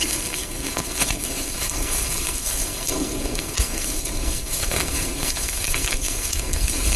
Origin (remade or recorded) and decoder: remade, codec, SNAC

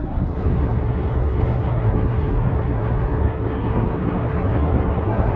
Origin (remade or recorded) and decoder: remade, codec, SNAC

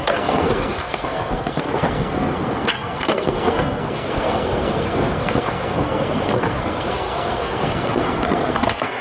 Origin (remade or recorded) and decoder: remade, codec, SNAC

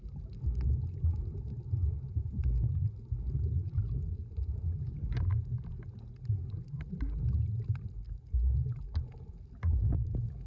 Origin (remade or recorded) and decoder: recorded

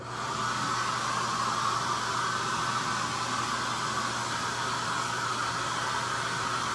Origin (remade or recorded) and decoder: recorded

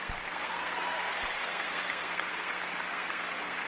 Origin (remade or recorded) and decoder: remade, codec, SNAC